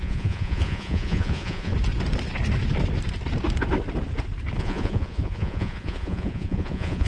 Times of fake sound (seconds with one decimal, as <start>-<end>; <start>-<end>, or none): 0.0-1.7; 4.6-7.1